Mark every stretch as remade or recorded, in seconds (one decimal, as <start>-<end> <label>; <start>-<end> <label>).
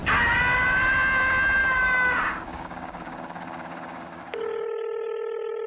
0.0-1.6 recorded; 1.6-4.2 remade; 4.2-5.7 recorded